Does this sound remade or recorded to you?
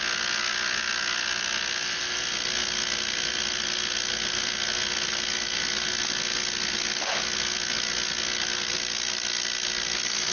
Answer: recorded